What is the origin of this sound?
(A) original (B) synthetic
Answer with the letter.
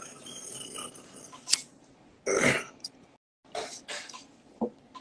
A